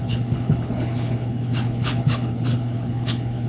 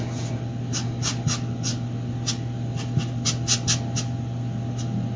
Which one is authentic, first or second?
second